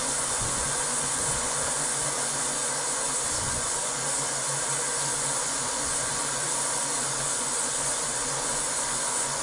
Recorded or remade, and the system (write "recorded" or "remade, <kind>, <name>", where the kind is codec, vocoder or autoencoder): remade, vocoder, Vocos